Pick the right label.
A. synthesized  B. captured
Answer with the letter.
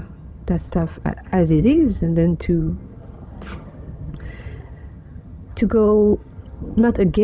A